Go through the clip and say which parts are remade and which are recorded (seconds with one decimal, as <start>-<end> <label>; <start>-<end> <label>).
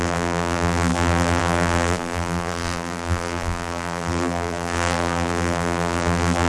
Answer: 0.0-6.5 remade